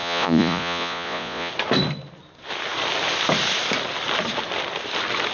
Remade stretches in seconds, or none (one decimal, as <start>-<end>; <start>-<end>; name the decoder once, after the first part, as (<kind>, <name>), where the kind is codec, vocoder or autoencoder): 0.0-1.5 (vocoder, Vocos)